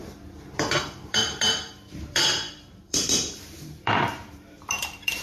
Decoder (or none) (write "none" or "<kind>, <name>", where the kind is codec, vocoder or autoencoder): vocoder, BigVGAN v2